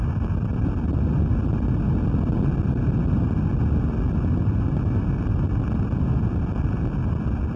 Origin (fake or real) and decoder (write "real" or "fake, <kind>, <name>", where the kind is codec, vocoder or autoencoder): real